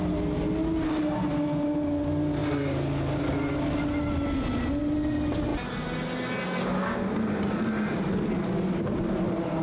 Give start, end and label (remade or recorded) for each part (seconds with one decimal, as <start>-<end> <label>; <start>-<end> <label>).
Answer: 0.0-9.6 recorded